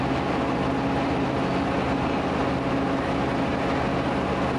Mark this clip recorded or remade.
recorded